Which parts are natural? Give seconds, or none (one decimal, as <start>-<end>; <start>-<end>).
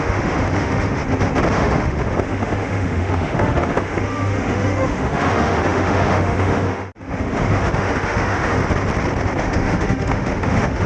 1.0-1.5; 8.6-9.4